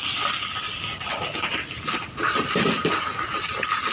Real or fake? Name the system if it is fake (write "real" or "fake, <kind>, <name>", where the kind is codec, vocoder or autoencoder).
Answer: real